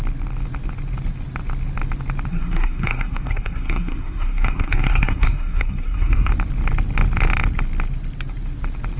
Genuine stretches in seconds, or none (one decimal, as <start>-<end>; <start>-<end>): 0.0-2.3; 6.3-9.0

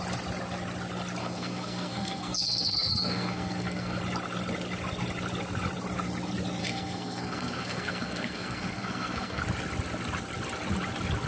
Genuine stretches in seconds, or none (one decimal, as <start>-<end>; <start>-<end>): 0.0-1.2; 4.0-6.6; 9.4-11.3

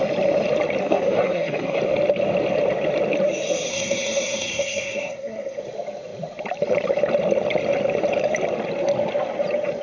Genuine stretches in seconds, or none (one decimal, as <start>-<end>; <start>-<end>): 0.0-0.8; 1.8-3.7; 5.6-9.8